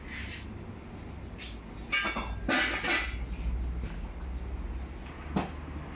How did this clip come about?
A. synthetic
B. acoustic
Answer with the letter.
B